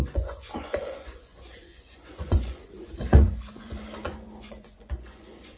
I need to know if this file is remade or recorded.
remade